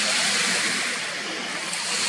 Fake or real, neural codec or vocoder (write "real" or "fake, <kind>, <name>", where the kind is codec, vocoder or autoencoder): real